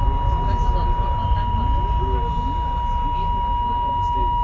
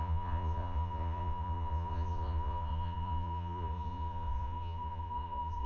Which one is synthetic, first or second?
second